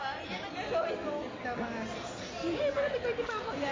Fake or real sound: real